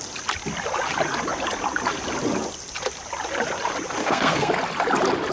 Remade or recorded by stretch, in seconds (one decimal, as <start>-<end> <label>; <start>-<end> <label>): 0.0-4.0 recorded; 4.0-4.5 remade; 4.5-5.3 recorded